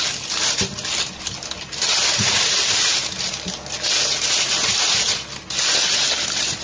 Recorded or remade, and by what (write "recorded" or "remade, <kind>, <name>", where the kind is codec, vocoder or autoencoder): recorded